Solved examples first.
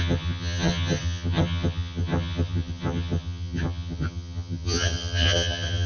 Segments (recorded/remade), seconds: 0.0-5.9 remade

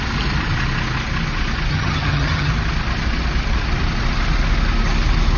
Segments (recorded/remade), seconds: 0.0-1.7 recorded; 1.7-2.5 remade; 2.5-5.4 recorded

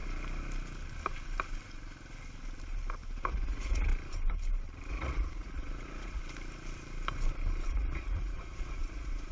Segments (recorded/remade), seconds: 0.0-3.3 recorded; 3.3-3.9 remade; 3.9-4.9 recorded; 4.9-6.2 remade; 6.2-7.7 recorded; 7.7-9.3 remade

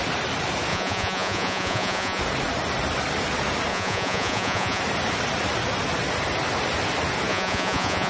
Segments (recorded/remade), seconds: 0.0-0.7 recorded; 0.7-2.2 remade; 2.2-3.7 recorded; 3.7-4.8 remade; 4.8-7.3 recorded; 7.3-8.1 remade

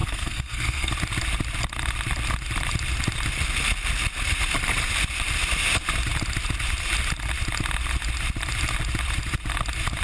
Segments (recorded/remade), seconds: 0.0-0.9 remade; 0.9-10.0 recorded

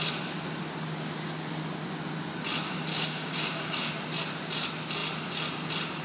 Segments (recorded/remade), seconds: 0.0-2.9 recorded; 2.9-3.9 remade; 3.9-6.0 recorded